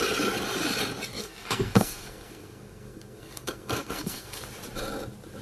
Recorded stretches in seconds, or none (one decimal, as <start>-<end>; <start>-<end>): 0.0-1.2; 4.4-5.4